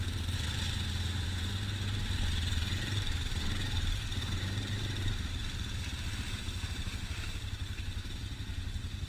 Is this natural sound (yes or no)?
no